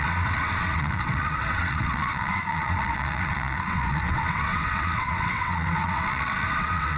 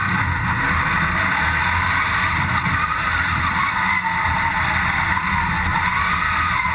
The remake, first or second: first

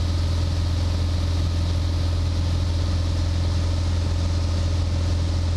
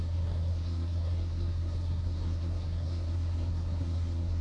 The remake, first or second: second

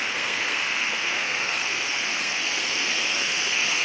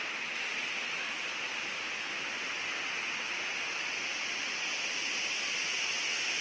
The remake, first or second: first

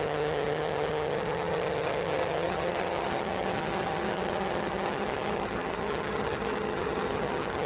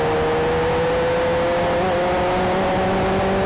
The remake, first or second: first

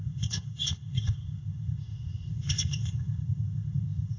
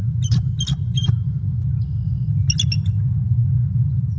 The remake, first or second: first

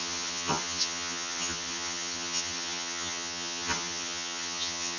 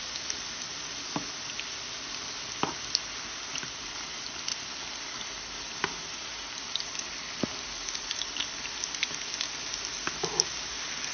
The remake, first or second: first